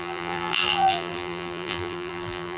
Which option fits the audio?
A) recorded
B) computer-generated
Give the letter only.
B